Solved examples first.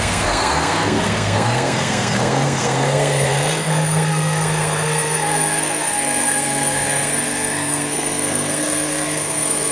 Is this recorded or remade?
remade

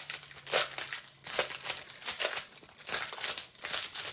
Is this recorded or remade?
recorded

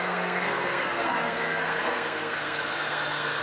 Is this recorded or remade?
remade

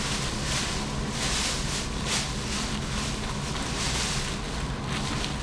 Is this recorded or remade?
recorded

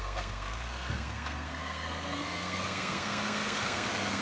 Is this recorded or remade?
remade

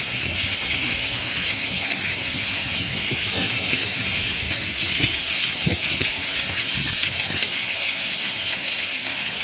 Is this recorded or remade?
remade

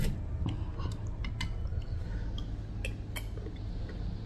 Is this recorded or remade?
recorded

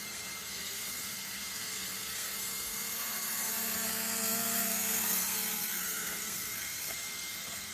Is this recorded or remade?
remade